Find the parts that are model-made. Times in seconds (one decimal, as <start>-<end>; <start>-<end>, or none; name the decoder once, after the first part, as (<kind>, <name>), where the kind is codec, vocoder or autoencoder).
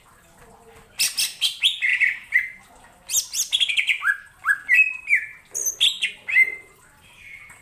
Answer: none